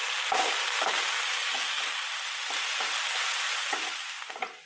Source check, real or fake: real